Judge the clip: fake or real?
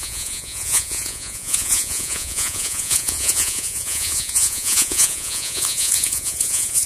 fake